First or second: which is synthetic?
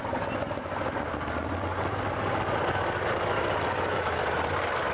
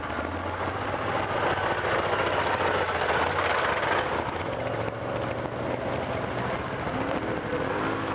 first